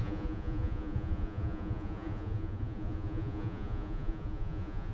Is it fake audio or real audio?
fake